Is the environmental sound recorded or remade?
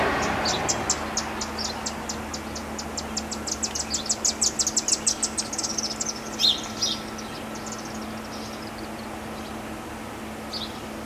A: recorded